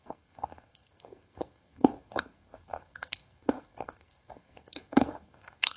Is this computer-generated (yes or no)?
yes